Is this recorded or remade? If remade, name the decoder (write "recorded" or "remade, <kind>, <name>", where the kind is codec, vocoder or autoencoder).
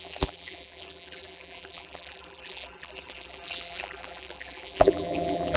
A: remade, vocoder, BigVGAN v2